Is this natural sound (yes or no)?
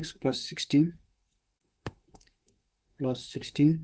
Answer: no